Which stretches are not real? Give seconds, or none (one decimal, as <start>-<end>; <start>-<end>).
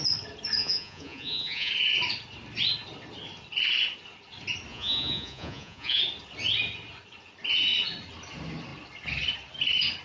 0.6-1.7; 4.7-6.0